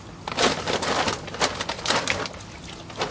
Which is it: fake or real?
real